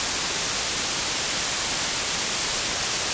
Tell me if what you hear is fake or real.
real